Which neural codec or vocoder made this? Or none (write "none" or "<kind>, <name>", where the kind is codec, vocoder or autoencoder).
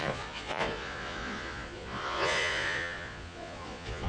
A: vocoder, Vocos